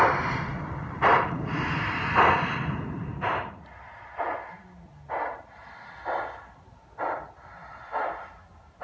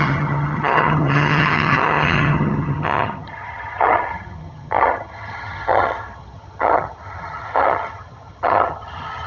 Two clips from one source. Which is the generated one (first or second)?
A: second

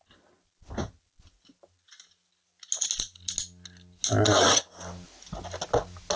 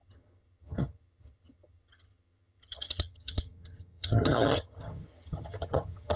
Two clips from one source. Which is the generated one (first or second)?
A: second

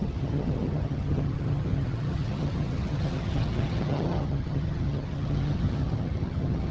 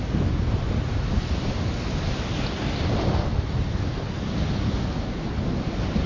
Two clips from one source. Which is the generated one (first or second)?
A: first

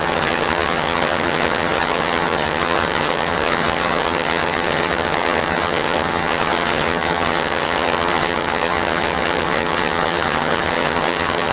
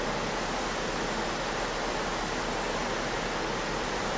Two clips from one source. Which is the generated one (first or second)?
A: first